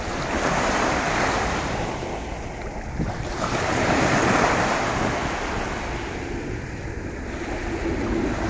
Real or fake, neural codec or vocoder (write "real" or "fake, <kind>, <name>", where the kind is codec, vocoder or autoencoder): real